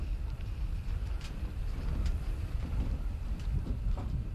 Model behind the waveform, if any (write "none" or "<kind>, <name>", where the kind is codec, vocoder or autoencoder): vocoder, BigVGAN v2